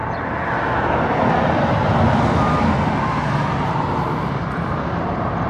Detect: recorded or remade recorded